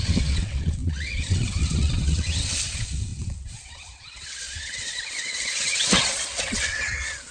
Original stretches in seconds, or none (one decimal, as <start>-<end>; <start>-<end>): none